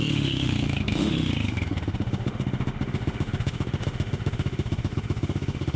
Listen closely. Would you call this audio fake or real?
fake